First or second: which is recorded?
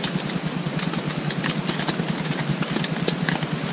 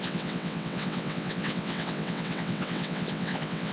first